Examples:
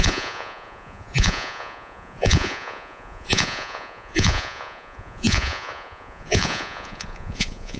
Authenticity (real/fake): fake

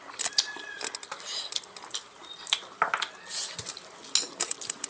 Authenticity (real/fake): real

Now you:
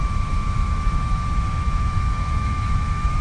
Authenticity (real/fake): fake